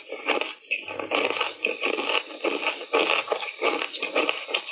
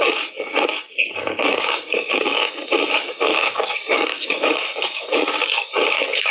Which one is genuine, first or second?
first